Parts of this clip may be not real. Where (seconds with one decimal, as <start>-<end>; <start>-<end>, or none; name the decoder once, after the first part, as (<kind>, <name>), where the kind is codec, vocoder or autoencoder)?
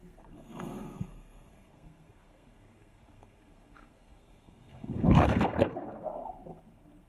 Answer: 0.0-7.1 (codec, SNAC)